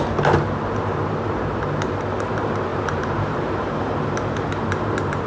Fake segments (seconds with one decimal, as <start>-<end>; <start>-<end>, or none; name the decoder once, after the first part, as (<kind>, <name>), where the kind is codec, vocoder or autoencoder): 2.7-4.5 (vocoder, BigVGAN v2)

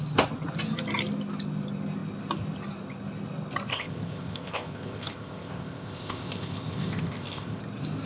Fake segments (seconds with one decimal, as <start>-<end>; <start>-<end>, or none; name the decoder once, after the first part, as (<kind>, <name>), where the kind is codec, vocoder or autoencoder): 3.7-7.6 (codec, ZipCodec)

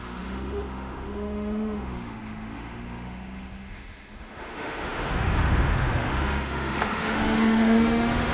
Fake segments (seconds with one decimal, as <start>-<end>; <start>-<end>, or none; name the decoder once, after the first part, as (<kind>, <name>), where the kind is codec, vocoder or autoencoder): 0.0-8.3 (autoencoder, DAC-VAE)

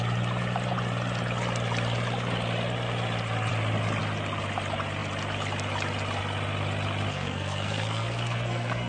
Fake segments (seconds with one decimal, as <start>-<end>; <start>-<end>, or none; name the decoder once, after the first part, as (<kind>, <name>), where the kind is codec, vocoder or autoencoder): 7.1-8.9 (codec, SNAC)

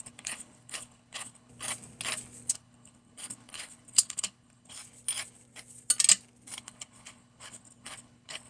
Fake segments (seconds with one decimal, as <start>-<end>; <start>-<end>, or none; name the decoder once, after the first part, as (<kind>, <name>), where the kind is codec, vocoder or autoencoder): 0.0-1.5 (codec, HILCodec); 2.5-4.8; 6.6-8.5